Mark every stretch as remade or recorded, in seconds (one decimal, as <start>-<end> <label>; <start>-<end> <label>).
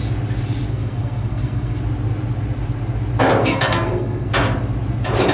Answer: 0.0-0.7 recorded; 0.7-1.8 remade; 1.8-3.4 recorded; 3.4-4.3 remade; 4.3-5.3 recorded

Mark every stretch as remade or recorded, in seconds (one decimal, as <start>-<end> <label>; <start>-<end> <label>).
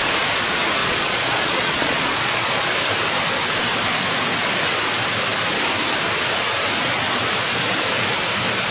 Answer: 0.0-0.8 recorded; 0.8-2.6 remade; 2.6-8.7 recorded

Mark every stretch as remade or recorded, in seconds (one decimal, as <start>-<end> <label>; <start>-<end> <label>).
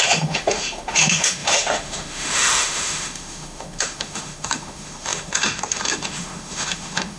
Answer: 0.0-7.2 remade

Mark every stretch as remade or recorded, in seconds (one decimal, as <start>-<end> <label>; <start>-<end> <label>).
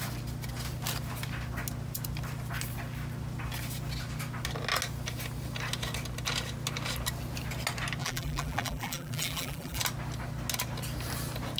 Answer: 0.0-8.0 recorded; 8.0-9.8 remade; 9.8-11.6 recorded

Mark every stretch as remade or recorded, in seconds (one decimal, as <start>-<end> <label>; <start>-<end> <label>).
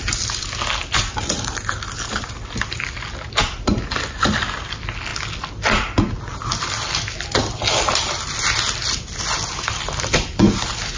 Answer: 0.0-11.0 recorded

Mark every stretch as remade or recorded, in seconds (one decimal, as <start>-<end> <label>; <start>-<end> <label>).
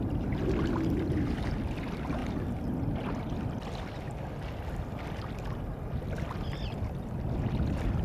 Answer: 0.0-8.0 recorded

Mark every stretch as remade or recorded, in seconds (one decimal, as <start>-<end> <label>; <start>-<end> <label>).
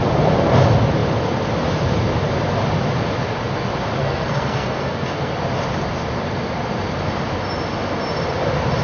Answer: 0.0-4.0 recorded; 4.0-5.3 remade; 5.3-8.8 recorded